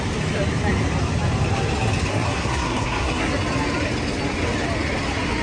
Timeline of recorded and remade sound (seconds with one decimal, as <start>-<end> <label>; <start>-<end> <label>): 0.0-2.1 recorded; 2.1-3.3 remade; 3.3-5.4 recorded

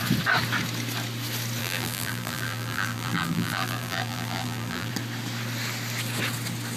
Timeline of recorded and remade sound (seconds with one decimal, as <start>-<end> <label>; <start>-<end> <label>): 0.0-1.6 recorded; 1.6-4.9 remade; 4.9-6.8 recorded

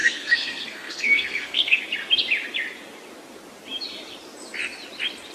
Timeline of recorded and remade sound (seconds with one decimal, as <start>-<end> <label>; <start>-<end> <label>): 0.0-1.8 remade; 1.8-5.3 recorded

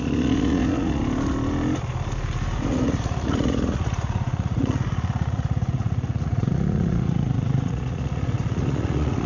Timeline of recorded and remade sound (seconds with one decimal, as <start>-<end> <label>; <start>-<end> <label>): 0.0-1.0 remade; 1.0-2.7 recorded; 2.7-9.3 remade

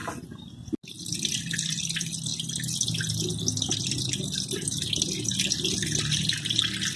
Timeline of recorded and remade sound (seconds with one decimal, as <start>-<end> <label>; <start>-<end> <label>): 0.0-7.0 recorded

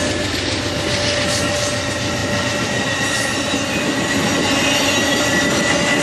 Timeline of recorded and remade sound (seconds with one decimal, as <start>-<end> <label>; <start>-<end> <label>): 0.0-6.0 recorded